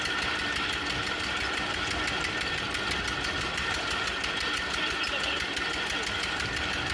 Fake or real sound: real